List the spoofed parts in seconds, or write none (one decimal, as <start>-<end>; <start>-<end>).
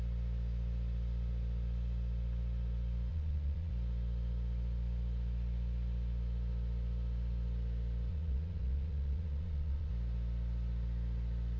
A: 3.1-3.7; 8.1-9.9